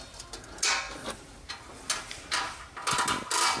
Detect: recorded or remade recorded